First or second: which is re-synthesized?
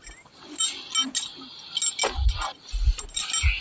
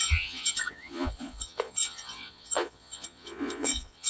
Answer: second